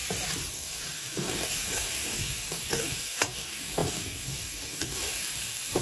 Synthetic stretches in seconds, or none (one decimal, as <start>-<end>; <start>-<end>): 0.5-5.8